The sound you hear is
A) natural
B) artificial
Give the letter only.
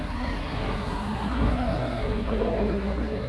B